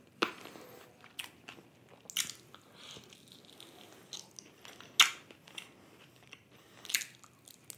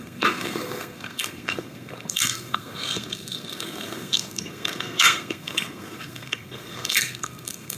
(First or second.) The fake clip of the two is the second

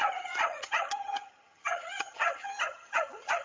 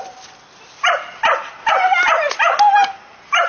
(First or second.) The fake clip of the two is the first